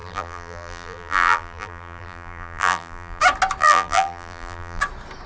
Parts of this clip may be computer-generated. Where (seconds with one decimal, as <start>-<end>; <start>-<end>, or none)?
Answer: 0.0-3.2; 3.6-4.8